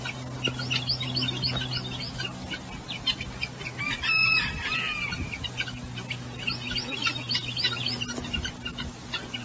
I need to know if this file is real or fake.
real